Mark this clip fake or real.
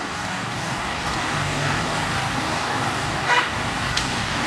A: fake